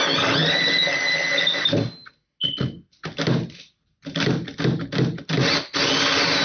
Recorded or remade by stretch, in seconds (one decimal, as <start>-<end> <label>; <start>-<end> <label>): 0.0-6.4 recorded